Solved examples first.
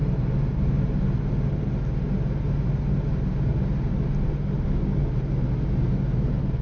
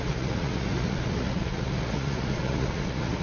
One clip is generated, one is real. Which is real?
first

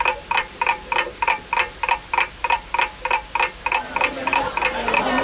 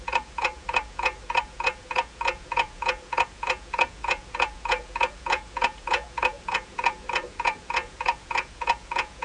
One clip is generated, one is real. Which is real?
first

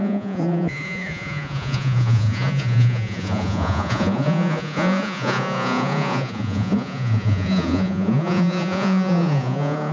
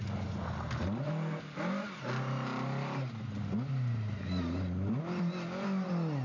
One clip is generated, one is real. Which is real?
second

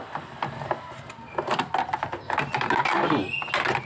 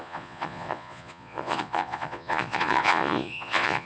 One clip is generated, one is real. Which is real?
first